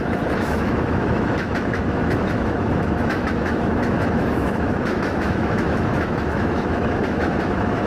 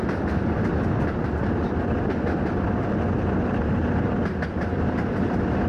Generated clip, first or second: first